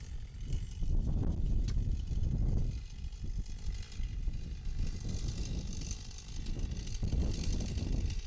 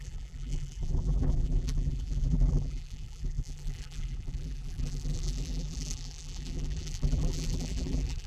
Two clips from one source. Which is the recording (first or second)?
first